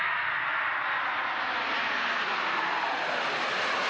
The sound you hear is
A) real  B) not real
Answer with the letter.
A